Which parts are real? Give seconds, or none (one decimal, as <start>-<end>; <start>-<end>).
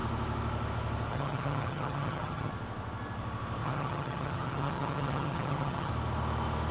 0.0-1.1; 2.5-3.6; 5.9-6.7